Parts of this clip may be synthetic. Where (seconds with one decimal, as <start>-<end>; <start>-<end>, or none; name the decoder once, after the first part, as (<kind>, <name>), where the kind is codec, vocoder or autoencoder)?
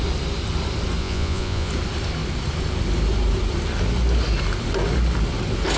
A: 1.0-1.7 (vocoder, Vocos)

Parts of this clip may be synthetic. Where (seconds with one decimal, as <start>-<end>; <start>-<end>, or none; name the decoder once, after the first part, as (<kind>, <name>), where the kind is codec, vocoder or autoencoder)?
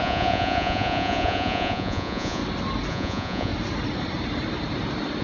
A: 0.0-2.4 (vocoder, Vocos); 2.9-3.5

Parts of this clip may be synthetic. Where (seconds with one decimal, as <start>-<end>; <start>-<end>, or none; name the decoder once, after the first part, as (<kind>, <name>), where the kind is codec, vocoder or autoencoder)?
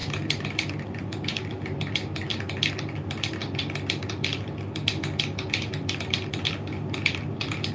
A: none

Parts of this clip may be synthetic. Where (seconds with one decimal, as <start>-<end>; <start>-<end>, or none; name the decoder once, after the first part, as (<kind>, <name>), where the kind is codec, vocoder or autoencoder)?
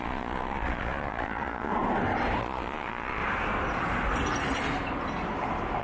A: 0.0-1.7 (vocoder, Vocos); 2.4-3.2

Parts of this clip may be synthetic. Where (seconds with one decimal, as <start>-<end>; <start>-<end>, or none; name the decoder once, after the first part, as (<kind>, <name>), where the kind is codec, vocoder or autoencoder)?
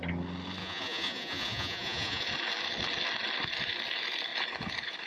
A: 0.6-2.2 (vocoder, Vocos)